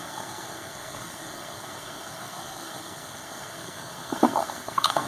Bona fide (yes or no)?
no